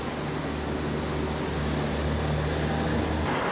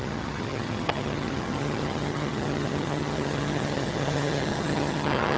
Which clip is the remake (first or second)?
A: second